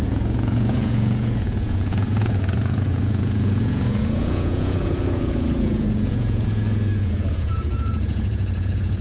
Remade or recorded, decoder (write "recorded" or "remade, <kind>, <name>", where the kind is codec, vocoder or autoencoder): remade, vocoder, Vocos